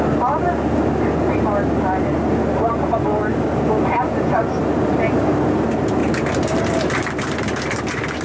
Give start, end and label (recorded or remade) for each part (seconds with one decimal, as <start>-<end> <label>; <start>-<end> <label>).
0.0-6.0 recorded; 6.0-6.6 remade; 6.6-8.2 recorded